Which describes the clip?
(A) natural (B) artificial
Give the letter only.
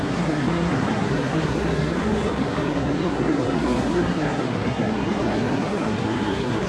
B